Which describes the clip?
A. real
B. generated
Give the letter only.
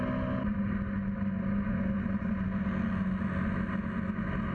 A